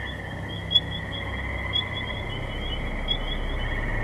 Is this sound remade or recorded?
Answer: recorded